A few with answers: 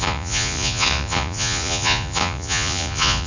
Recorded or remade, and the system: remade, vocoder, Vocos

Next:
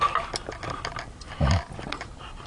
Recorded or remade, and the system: recorded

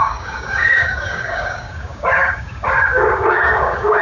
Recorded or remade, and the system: remade, codec, DAC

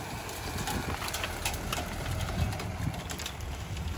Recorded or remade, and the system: recorded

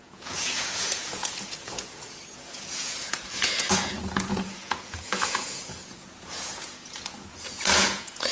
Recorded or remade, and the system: remade, vocoder, Vocos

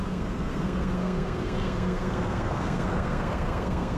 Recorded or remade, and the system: remade, codec, SNAC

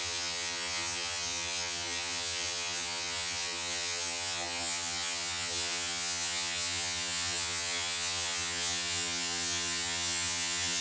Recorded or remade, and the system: remade, vocoder, HiFi-GAN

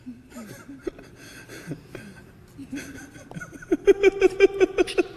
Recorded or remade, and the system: recorded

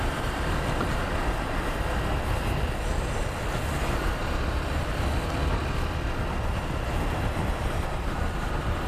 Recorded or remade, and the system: recorded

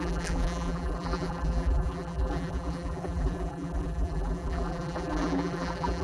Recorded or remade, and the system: remade, vocoder, BigVGAN v2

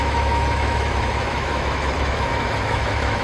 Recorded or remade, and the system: remade, autoencoder, DAC-VAE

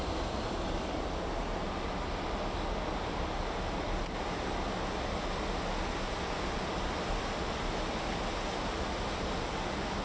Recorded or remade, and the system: recorded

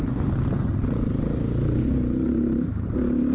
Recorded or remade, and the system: recorded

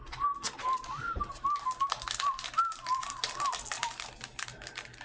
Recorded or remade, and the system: recorded